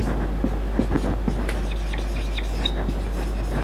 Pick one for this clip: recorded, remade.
recorded